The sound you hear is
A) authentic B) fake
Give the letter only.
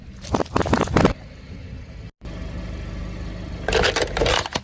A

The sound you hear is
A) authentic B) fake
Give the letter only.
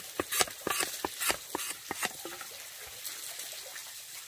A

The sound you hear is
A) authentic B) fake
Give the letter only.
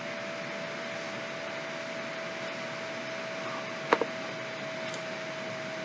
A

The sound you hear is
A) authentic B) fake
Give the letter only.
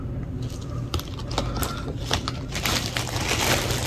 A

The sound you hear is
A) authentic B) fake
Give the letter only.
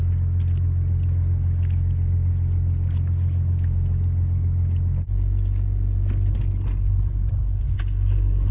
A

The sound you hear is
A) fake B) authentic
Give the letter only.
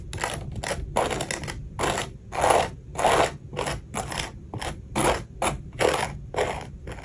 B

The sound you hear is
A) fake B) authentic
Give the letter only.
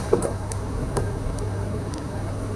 A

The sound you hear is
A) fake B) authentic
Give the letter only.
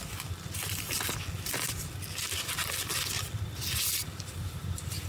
B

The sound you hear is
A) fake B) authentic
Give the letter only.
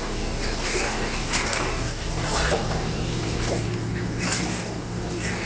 A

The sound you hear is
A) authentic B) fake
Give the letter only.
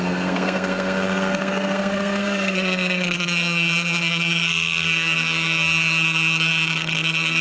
B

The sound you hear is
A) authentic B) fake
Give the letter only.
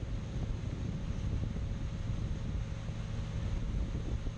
A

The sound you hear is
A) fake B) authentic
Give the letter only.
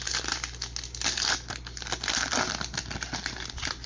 B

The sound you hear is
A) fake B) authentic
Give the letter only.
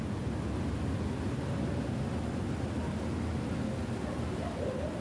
B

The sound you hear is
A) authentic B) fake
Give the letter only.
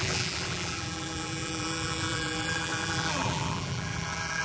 B